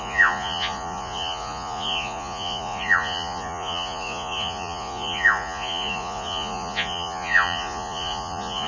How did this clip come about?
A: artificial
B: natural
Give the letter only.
A